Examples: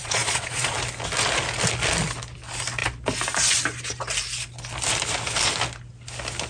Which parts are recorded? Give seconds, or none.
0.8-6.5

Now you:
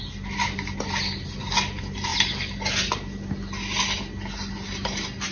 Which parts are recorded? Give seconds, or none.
0.0-5.3

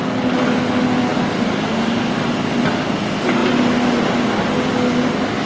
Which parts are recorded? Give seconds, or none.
0.0-5.5